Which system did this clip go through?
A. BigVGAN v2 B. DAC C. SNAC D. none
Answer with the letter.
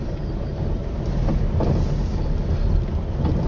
D